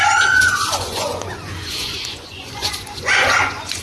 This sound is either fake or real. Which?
fake